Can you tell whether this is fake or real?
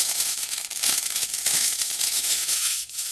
fake